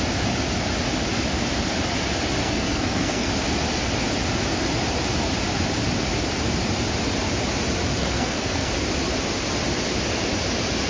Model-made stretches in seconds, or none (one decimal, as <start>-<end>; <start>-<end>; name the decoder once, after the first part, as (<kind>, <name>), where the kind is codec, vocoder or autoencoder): 2.4-3.3 (codec, SNAC); 8.0-8.7